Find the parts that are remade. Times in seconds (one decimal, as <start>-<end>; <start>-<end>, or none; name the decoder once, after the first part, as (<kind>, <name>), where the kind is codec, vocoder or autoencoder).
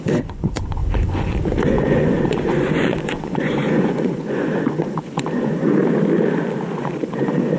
0.0-5.8 (vocoder, Vocos); 6.8-7.6